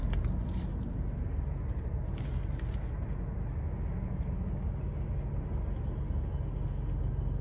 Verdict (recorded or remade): recorded